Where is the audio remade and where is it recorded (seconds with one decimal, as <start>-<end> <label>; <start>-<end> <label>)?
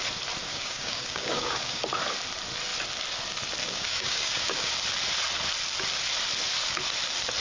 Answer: 0.0-0.5 recorded; 0.5-1.8 remade; 1.8-3.6 recorded; 3.6-4.7 remade; 4.7-7.4 recorded